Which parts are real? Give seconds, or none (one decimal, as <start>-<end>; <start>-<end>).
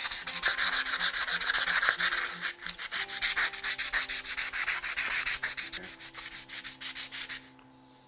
0.0-8.1